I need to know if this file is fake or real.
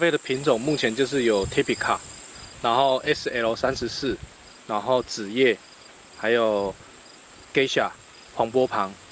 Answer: real